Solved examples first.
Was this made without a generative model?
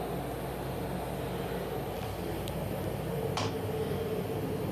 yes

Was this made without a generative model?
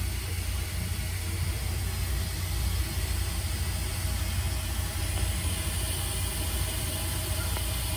yes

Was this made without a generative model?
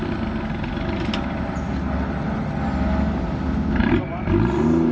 yes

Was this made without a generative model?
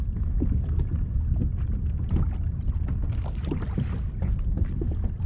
yes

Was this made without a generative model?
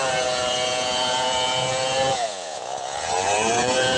no